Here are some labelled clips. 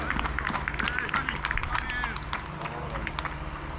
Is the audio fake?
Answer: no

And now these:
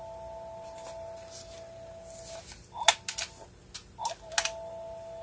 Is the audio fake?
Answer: no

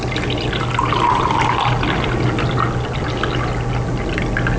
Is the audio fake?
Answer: no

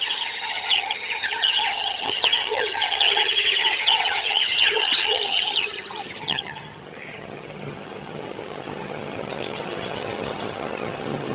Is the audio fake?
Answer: yes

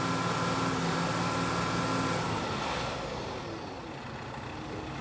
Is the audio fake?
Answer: no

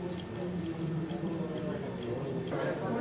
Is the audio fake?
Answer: no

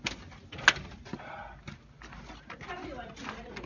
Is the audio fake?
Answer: no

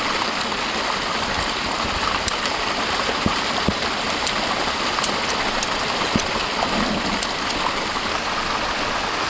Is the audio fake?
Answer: no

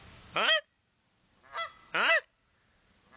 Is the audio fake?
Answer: no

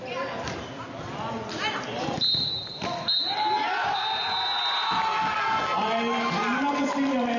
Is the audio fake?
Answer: no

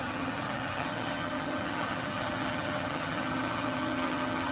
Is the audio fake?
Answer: yes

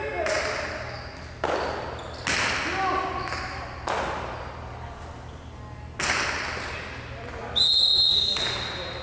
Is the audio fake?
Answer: no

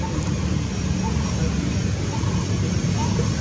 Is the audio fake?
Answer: no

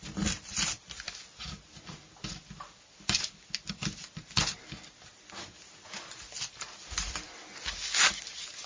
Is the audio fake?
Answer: no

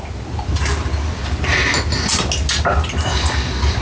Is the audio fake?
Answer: no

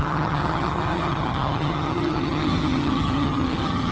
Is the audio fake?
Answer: yes